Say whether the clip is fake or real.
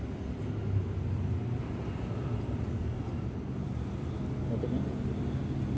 real